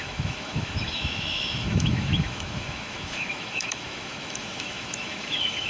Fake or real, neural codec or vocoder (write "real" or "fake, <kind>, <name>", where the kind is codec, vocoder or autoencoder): fake, autoencoder, DAC-VAE